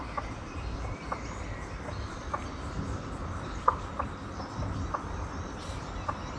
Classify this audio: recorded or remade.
recorded